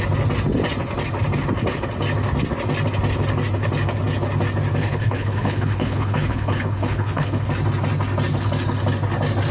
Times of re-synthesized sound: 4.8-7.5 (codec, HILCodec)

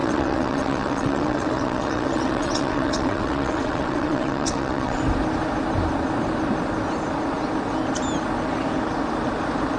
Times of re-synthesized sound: 0.0-5.0 (vocoder, WaveNeXt)

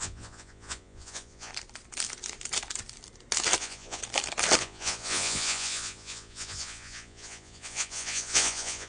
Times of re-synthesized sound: 0.0-1.5 (vocoder, Vocos); 3.6-4.0; 4.6-8.9

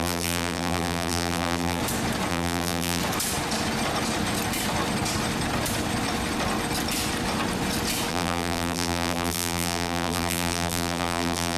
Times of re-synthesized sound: 0.0-1.8 (vocoder, BigVGAN v2); 2.3-3.0; 8.1-11.6